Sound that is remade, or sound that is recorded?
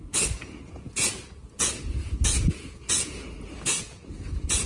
remade